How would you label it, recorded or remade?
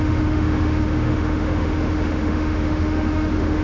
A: remade